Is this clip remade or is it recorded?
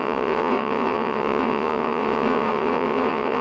remade